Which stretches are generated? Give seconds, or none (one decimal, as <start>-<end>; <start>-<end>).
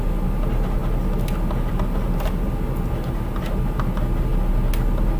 none